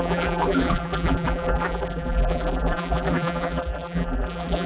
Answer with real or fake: fake